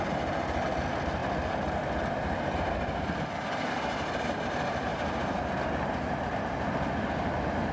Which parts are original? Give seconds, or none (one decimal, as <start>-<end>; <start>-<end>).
0.0-7.7